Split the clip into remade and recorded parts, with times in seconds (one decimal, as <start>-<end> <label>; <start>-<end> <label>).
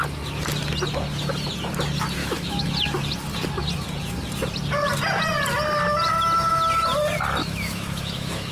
0.0-2.2 recorded; 2.2-2.7 remade; 2.7-7.4 recorded; 7.4-8.5 remade